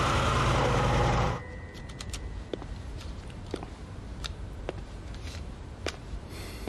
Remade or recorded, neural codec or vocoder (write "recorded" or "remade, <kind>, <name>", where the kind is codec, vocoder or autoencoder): remade, vocoder, BigVGAN v2